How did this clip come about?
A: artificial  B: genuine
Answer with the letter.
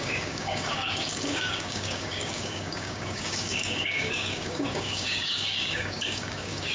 A